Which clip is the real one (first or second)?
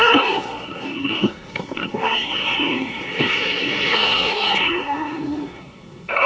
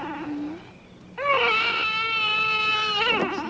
second